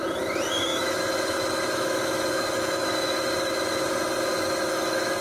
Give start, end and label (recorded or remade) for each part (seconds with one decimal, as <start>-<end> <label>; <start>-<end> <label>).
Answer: 0.0-0.7 recorded; 0.7-2.9 remade; 2.9-4.3 recorded; 4.3-5.2 remade